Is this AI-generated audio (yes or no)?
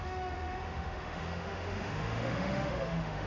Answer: yes